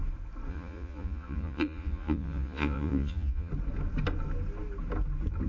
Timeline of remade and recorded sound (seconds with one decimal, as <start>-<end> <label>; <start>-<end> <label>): 0.0-0.5 recorded; 0.5-3.5 remade; 3.5-5.5 recorded